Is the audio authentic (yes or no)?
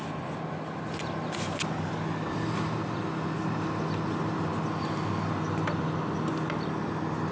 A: yes